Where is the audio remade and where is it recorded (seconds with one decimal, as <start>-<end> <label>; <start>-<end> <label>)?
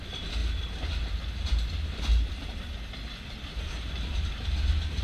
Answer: 0.0-5.0 recorded